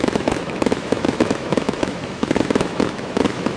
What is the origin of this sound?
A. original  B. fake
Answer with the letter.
B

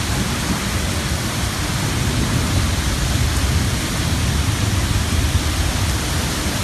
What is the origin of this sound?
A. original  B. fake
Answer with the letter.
A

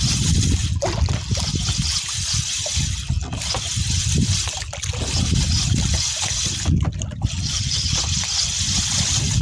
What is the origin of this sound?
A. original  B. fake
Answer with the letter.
A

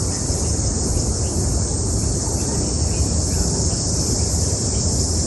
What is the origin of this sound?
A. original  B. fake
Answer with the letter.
A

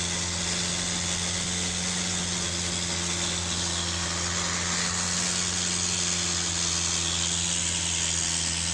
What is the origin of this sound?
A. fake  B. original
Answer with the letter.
B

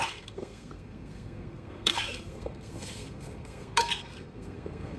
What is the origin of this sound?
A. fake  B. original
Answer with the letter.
A